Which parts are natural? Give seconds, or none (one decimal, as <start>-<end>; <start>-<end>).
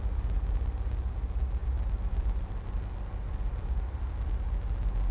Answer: 0.0-5.1